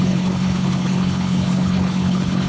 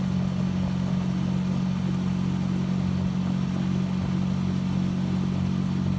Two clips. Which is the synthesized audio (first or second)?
first